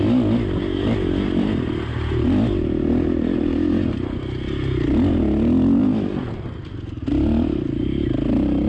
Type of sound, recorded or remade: recorded